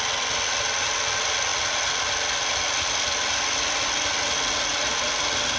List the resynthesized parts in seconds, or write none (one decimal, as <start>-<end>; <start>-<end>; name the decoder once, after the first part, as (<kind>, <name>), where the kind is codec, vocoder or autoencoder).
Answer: none